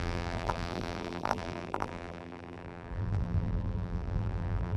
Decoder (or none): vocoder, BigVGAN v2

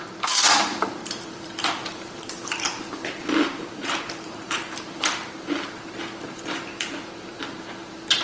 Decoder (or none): vocoder, BigVGAN v2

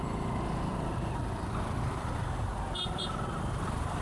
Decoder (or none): vocoder, BigVGAN v2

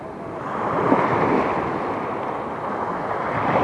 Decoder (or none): none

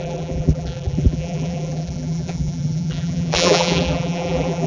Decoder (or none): vocoder, BigVGAN v2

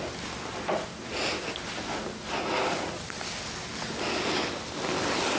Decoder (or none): none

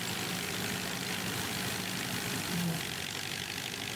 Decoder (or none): none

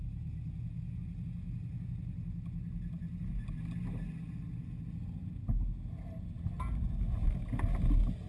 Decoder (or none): none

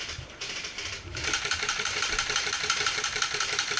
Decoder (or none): vocoder, BigVGAN v2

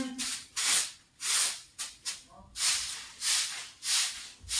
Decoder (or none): none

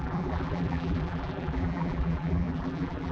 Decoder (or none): vocoder, BigVGAN v2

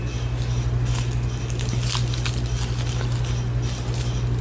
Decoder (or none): none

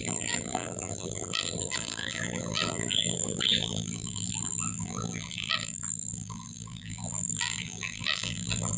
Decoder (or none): vocoder, BigVGAN v2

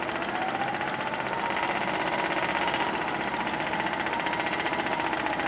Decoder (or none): none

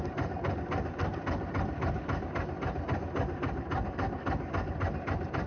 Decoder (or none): none